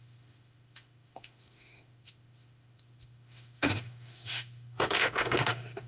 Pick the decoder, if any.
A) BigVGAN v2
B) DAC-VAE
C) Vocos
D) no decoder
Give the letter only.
B